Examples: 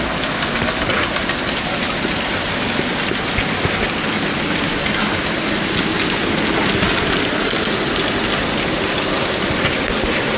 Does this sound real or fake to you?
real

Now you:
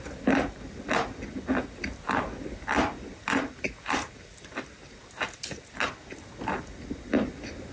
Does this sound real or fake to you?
real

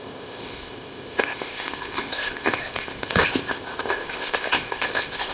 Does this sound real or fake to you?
fake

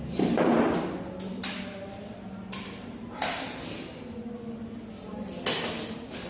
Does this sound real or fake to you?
real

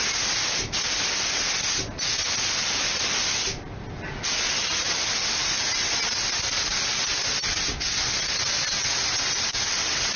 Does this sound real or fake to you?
real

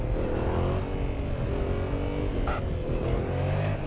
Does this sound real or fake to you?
real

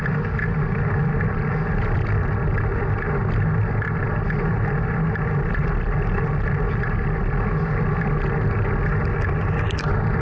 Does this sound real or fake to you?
real